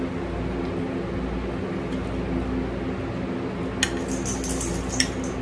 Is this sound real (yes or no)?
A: yes